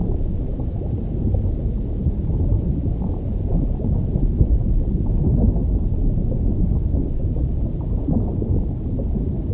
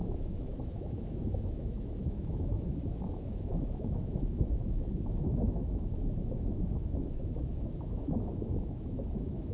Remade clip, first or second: second